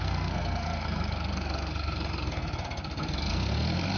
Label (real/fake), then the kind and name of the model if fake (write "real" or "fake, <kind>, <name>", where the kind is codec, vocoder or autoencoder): fake, codec, SNAC